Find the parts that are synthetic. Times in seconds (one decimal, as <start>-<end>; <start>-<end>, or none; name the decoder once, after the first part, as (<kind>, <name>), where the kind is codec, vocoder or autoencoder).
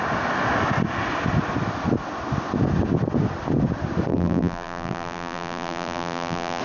4.1-6.6 (vocoder, BigVGAN v2)